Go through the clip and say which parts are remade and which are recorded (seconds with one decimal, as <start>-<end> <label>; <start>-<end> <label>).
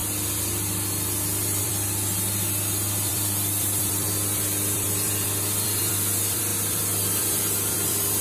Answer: 0.0-1.6 recorded; 1.6-8.2 remade